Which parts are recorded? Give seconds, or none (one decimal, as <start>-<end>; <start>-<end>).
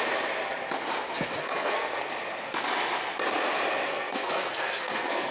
0.0-1.4; 2.1-3.9